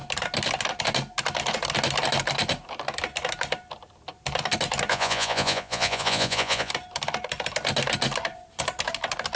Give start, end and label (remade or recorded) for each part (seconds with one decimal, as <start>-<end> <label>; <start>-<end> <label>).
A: 0.0-4.9 recorded; 4.9-6.7 remade; 6.7-9.4 recorded